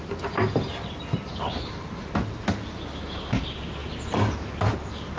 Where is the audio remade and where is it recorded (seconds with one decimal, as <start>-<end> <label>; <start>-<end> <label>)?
0.0-5.2 recorded